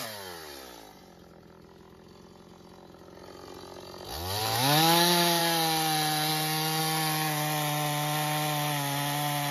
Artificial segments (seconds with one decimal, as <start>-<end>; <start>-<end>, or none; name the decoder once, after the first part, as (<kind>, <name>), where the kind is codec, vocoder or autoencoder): 4.4-5.4 (autoencoder, DAC-VAE)